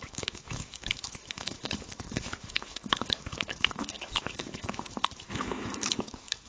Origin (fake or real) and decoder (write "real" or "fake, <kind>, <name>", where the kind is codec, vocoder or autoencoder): fake, autoencoder, DAC-VAE